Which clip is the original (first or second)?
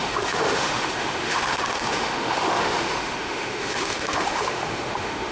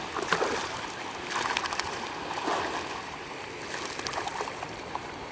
second